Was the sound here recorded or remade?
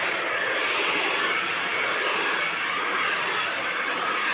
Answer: recorded